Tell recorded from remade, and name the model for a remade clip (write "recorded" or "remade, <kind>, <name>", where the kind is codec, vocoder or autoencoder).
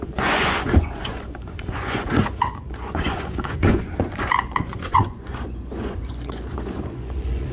remade, vocoder, Vocos